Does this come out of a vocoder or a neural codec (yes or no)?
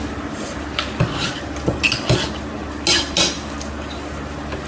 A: no